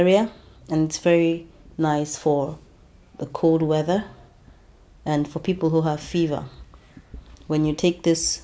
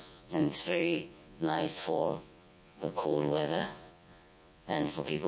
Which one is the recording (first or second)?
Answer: first